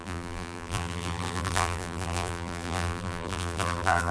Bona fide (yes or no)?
no